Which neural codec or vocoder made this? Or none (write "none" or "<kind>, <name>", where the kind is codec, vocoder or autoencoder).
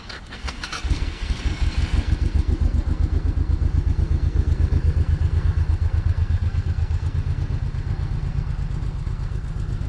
codec, SNAC